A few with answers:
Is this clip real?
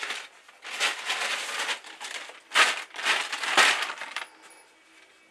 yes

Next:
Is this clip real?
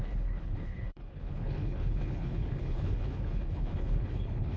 no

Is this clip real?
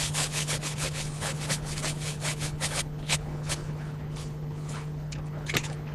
no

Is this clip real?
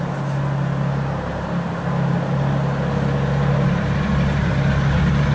yes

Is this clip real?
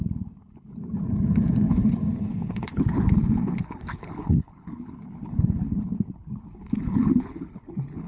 no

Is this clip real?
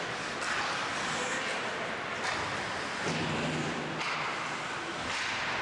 yes